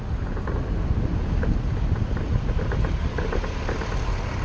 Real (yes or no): yes